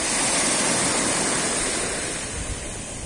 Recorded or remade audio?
recorded